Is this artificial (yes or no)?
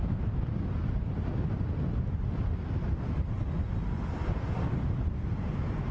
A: no